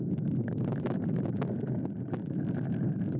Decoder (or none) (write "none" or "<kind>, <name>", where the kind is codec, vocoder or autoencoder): none